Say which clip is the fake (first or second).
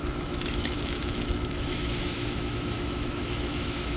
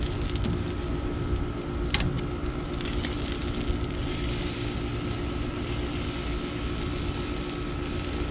first